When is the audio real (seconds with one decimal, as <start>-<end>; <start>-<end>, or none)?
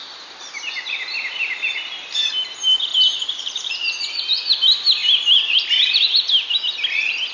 0.7-2.9; 4.4-5.0; 6.2-7.3